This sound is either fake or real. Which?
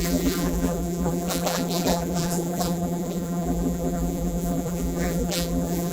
fake